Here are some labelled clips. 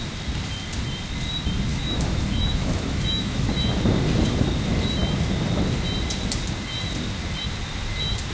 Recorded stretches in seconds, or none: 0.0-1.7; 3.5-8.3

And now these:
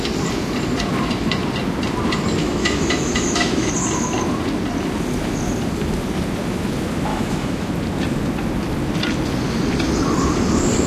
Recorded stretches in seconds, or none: 0.0-2.4; 3.7-7.1; 7.7-10.9

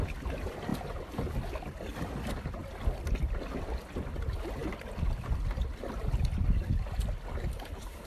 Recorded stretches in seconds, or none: 0.0-8.1

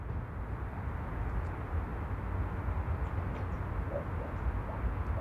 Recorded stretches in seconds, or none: 0.0-5.2

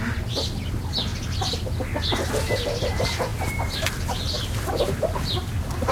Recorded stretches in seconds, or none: 0.0-5.9

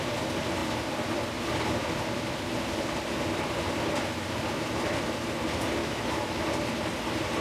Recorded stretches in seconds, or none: 0.0-5.8; 6.4-7.4